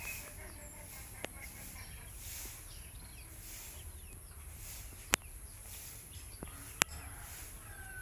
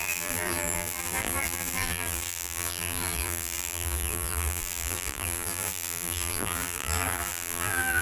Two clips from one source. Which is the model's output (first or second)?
second